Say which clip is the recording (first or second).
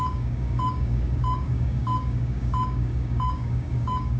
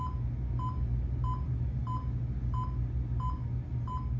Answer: second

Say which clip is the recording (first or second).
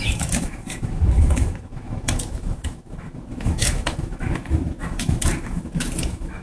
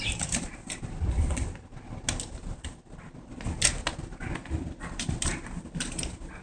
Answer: second